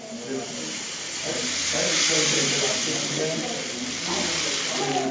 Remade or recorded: recorded